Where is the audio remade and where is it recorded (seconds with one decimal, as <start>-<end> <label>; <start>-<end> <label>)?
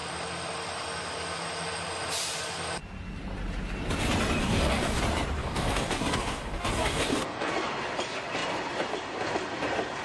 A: 0.0-4.4 recorded; 4.4-5.0 remade; 5.0-5.4 recorded; 5.4-7.5 remade; 7.5-10.0 recorded